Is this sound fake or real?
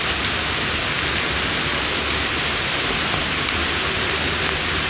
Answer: real